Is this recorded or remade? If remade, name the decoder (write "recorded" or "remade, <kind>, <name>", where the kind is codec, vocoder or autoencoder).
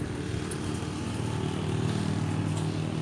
recorded